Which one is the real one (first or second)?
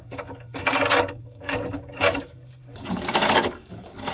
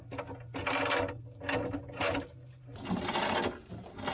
second